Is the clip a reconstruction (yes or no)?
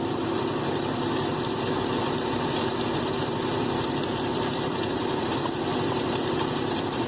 yes